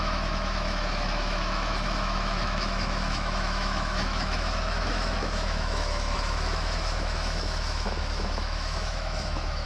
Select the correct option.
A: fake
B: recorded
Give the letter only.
A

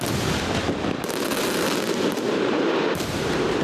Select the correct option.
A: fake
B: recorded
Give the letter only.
B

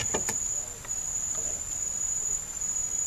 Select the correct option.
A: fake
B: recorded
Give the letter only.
B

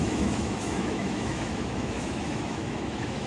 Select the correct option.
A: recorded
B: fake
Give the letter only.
B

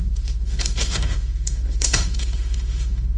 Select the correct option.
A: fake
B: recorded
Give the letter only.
A